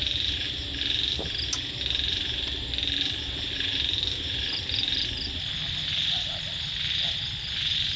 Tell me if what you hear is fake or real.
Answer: real